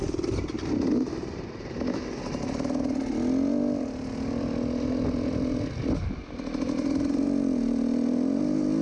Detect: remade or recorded recorded